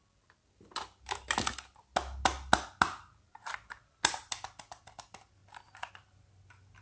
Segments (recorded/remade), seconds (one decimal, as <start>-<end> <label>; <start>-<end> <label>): 0.0-6.8 recorded